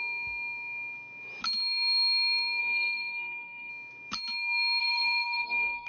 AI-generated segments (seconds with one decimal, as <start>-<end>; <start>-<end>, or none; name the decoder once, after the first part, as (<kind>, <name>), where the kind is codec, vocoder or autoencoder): 2.6-3.7 (codec, SNAC); 4.8-5.9